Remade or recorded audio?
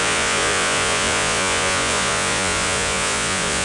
remade